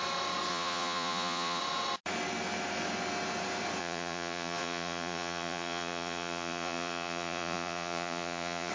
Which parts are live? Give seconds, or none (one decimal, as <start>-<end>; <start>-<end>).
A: 0.0-0.5; 1.6-3.8